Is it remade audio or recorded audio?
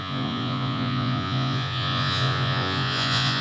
remade